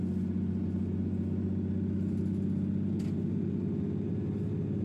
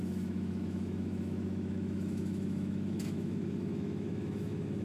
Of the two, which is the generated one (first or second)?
second